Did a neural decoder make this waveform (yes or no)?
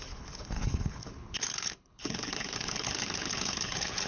yes